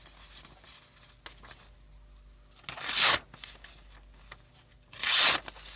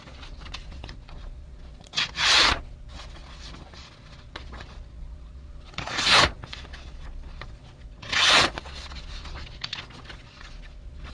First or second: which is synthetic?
second